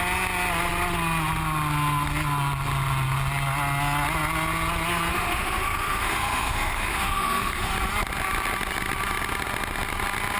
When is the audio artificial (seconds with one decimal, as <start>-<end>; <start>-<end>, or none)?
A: 5.1-7.7

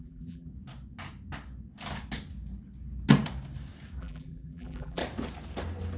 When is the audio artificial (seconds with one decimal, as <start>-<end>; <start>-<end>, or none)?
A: 0.0-0.5; 4.0-5.0

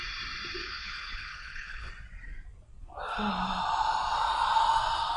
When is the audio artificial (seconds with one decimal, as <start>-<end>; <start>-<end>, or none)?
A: 0.6-1.9

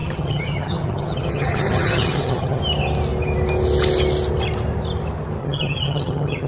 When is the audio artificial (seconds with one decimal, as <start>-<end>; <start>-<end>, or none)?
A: 0.0-2.6; 5.4-6.5